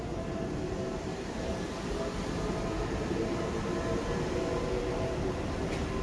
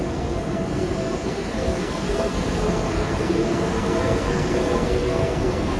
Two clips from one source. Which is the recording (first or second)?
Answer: first